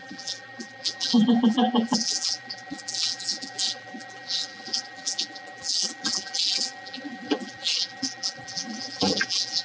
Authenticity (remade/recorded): remade